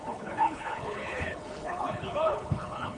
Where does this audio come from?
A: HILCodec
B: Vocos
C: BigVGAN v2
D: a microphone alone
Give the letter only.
A